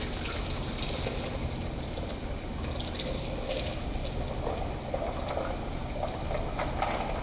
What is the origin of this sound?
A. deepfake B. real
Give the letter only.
B